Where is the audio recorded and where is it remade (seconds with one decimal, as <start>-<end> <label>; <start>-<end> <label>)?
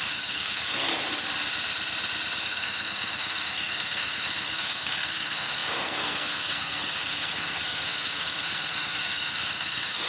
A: 0.0-0.9 remade; 0.9-2.4 recorded; 2.4-10.1 remade